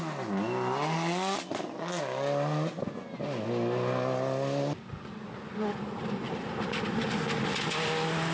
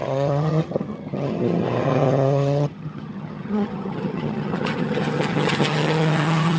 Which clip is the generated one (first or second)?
second